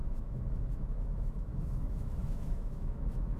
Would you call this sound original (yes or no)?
no